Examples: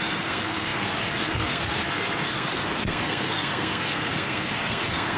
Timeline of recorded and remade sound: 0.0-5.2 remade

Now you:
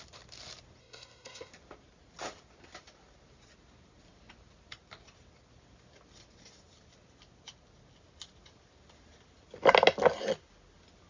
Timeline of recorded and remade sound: 0.0-0.8 recorded; 0.8-1.5 remade; 1.5-11.1 recorded

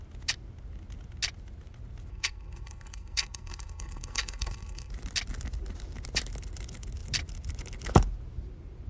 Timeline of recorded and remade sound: 0.0-2.1 recorded; 2.1-4.9 remade; 4.9-8.9 recorded